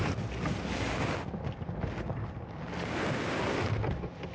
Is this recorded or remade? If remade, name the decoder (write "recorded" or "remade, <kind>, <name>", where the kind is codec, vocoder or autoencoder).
recorded